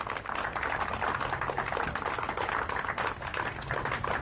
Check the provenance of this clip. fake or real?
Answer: real